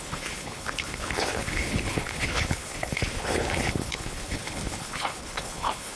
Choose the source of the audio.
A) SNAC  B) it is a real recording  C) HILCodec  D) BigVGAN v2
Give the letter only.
C